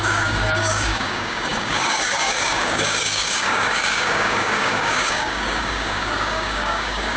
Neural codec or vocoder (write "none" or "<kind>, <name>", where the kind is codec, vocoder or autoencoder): codec, DAC